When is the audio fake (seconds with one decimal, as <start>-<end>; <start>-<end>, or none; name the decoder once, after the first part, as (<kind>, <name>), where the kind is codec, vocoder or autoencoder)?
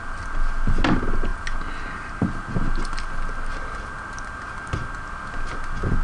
none